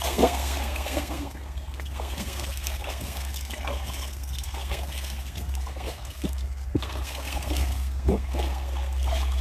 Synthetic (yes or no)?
yes